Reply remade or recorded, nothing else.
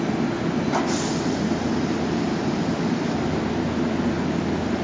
recorded